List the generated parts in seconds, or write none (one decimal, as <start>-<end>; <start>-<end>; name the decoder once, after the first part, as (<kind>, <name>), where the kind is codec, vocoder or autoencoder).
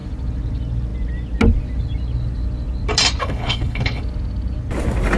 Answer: 3.2-4.0 (codec, HILCodec)